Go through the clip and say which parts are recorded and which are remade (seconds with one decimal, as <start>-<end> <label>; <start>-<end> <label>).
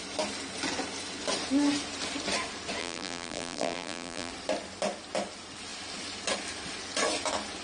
0.0-2.8 recorded; 2.8-4.3 remade; 4.3-7.6 recorded